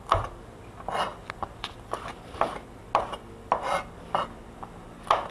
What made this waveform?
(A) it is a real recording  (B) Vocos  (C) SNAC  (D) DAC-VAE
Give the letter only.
A